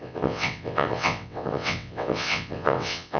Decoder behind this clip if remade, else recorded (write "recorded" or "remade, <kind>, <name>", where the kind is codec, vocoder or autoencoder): remade, vocoder, WaveNeXt